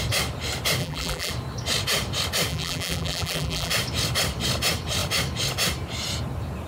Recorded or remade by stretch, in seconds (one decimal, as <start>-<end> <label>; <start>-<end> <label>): 0.0-0.8 recorded; 0.8-1.3 remade; 1.3-2.5 recorded; 2.5-3.7 remade; 3.7-6.7 recorded